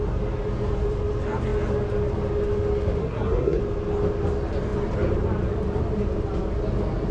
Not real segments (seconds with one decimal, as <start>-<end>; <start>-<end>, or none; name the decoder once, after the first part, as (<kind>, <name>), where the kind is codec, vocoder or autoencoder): 3.0-3.6 (codec, SNAC)